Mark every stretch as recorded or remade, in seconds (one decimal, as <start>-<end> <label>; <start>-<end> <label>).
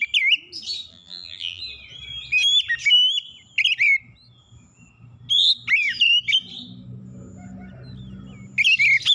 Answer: 0.0-0.9 recorded; 0.9-1.6 remade; 1.6-9.1 recorded